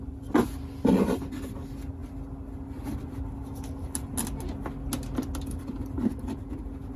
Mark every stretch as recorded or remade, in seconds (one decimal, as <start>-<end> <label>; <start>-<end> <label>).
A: 0.0-7.0 recorded